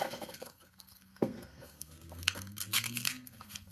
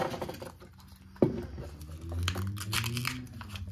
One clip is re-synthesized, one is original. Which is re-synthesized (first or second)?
first